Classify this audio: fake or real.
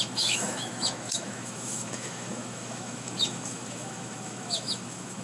fake